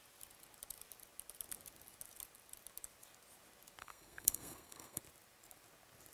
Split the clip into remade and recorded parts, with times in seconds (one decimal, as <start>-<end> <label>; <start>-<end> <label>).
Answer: 0.0-3.8 recorded; 3.8-5.0 remade; 5.0-6.1 recorded